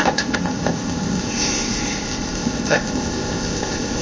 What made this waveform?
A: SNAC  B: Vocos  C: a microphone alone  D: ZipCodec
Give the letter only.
D